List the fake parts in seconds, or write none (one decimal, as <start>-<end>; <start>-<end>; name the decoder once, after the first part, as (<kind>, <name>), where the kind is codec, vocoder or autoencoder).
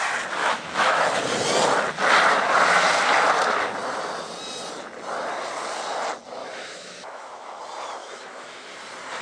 0.4-1.1 (autoencoder, DAC-VAE); 6.4-7.6; 8.0-8.7